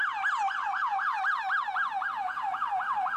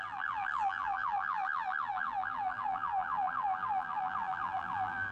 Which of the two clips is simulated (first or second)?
second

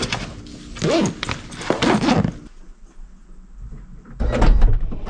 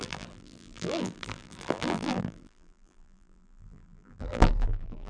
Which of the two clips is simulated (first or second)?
second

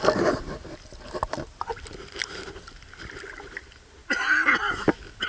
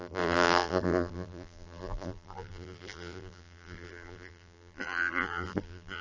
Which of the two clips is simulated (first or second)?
second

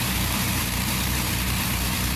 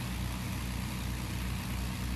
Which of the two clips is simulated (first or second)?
first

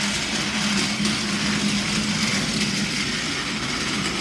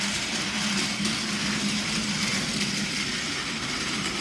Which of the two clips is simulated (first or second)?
second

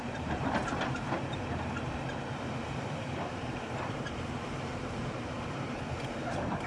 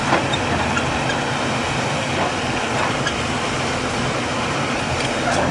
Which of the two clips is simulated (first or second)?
first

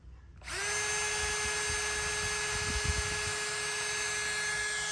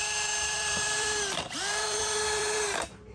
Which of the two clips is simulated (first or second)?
second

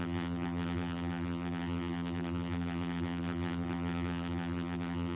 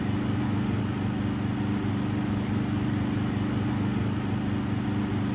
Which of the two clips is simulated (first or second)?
first